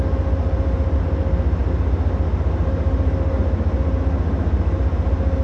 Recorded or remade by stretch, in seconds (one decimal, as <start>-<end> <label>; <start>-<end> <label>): 0.0-5.4 recorded